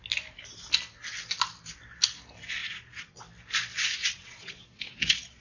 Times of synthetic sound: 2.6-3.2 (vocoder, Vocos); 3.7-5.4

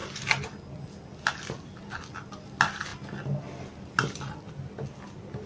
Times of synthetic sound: none

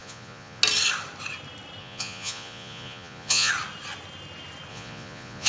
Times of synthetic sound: 0.0-0.6 (vocoder, Vocos); 1.8-3.5; 4.7-5.5

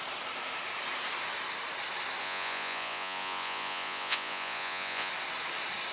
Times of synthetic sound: 2.2-5.1 (vocoder, Vocos)